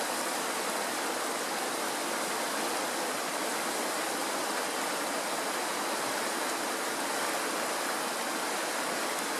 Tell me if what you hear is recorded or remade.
recorded